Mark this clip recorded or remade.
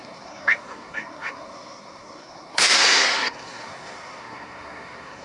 remade